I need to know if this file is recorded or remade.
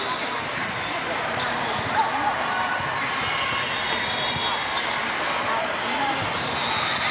recorded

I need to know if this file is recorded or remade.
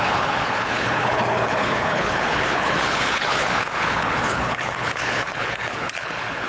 remade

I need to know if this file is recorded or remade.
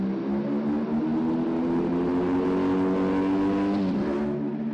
recorded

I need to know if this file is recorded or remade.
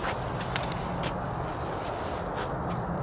recorded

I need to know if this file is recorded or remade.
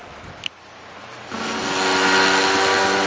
recorded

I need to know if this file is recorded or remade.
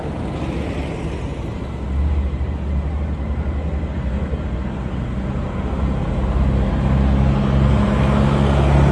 recorded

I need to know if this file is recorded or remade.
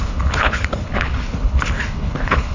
remade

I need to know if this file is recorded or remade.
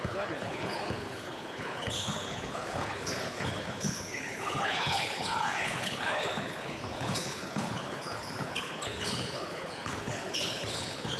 remade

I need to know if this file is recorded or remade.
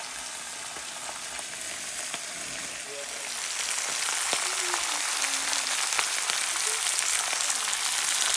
recorded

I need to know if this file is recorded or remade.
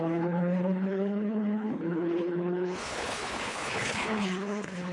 remade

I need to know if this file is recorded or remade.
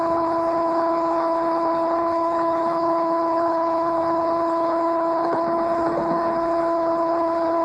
remade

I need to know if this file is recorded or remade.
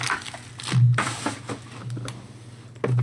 recorded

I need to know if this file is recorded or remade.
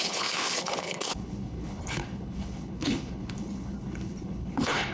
remade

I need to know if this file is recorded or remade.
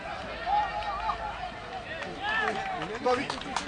recorded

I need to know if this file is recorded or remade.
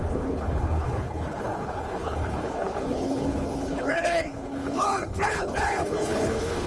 remade